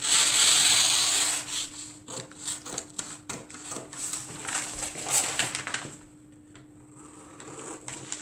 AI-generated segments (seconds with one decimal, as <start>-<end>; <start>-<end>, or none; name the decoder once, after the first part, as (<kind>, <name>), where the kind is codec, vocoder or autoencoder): 0.0-8.2 (vocoder, BigVGAN v2)